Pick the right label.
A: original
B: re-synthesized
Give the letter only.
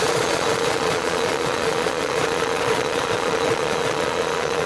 B